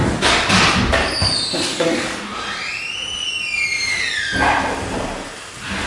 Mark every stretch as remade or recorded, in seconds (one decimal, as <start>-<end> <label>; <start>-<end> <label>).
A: 0.0-0.6 remade; 0.6-1.7 recorded; 1.7-2.2 remade; 2.2-5.9 recorded

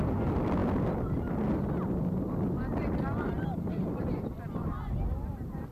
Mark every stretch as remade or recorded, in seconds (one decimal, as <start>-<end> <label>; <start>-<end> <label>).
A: 0.0-5.7 recorded

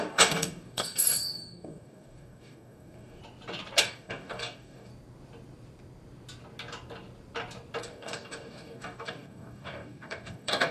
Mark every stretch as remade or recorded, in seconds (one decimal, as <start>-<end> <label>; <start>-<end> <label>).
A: 0.0-3.2 remade; 3.2-3.8 recorded; 3.8-4.9 remade; 4.9-7.8 recorded; 7.8-10.7 remade

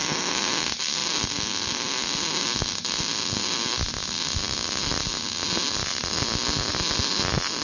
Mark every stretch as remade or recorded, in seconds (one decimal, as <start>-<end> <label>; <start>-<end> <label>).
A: 0.0-7.6 recorded